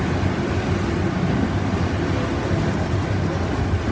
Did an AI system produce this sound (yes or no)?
no